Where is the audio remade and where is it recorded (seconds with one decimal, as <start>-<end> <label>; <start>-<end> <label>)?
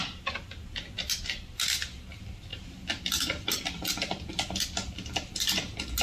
0.0-2.5 recorded; 2.5-3.9 remade; 3.9-6.0 recorded